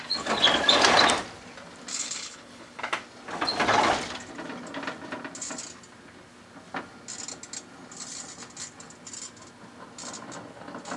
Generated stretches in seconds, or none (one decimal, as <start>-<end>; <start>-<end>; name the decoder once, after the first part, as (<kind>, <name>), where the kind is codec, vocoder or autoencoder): 1.9-2.8 (codec, HILCodec)